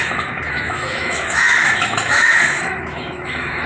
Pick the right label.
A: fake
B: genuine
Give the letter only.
A